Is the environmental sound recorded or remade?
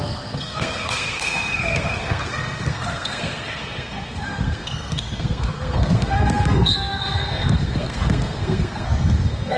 remade